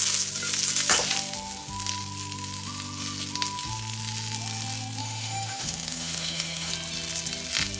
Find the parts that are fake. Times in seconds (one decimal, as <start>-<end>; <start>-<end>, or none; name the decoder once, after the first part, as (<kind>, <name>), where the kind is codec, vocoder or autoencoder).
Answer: 5.0-6.7 (autoencoder, DAC-VAE)